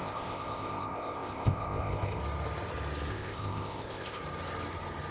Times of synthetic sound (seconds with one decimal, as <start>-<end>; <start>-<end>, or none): 0.0-2.2; 3.1-4.2